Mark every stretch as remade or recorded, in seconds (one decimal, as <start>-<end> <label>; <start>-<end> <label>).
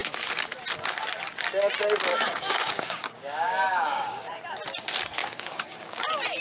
0.0-2.1 recorded; 2.1-4.3 remade; 4.3-5.2 recorded; 5.2-6.0 remade; 6.0-6.4 recorded